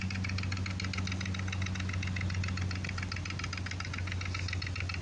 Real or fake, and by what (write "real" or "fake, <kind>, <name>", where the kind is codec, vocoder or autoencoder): real